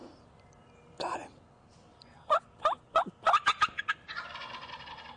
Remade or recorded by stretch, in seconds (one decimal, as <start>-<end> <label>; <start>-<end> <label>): 0.0-5.2 recorded